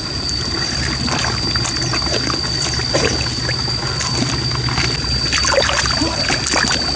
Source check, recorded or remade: recorded